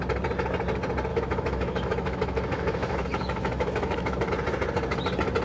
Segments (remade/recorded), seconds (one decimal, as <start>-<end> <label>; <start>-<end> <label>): 0.0-1.1 recorded; 1.1-4.3 remade; 4.3-5.4 recorded